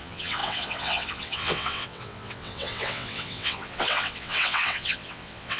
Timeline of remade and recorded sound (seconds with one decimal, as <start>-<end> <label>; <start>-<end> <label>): 0.0-5.6 remade